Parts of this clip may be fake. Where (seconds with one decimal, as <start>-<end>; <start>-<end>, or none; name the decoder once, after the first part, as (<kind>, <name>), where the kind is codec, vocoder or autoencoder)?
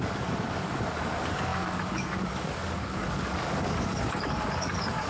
0.0-5.1 (codec, DAC)